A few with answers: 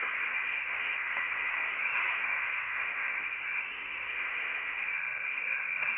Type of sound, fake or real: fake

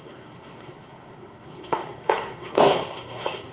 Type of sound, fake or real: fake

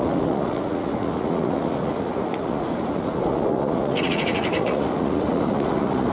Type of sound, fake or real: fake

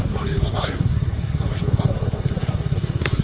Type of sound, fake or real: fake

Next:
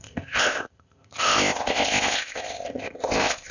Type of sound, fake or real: fake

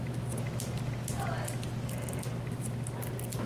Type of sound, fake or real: real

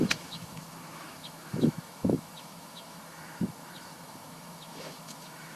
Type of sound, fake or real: fake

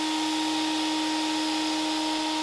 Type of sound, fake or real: real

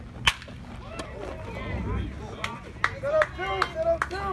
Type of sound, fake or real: real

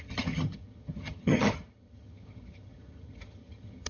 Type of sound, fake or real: fake